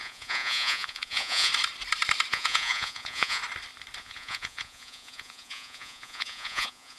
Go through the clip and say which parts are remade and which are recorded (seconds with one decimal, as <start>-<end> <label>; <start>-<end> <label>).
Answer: 0.0-1.5 remade; 1.5-2.3 recorded; 2.3-3.4 remade; 3.4-4.0 recorded; 4.0-7.0 remade